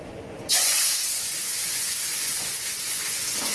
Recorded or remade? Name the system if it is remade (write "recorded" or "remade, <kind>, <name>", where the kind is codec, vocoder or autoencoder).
remade, vocoder, Vocos